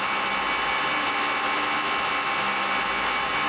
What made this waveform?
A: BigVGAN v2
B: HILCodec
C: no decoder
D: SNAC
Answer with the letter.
C